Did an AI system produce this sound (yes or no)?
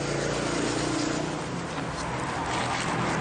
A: no